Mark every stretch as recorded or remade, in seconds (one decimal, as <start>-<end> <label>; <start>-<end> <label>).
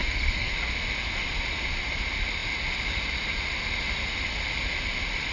0.0-0.5 remade; 0.5-5.3 recorded